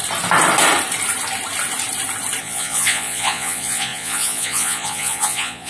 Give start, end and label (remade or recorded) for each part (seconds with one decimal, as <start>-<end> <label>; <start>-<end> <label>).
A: 0.0-2.4 recorded; 2.4-5.7 remade